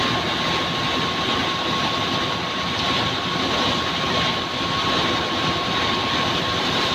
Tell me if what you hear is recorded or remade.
recorded